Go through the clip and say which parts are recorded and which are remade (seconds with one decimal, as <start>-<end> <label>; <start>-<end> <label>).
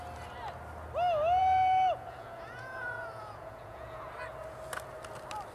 0.0-1.4 recorded; 1.4-4.1 remade; 4.1-5.5 recorded